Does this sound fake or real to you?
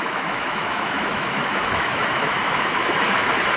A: fake